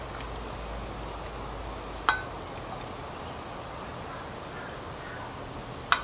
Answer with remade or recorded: recorded